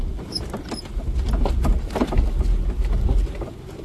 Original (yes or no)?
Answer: no